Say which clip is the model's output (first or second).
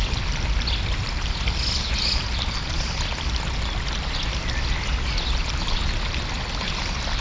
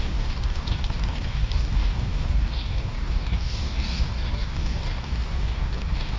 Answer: second